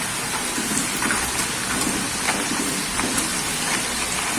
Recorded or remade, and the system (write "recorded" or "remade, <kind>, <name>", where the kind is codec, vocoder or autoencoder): recorded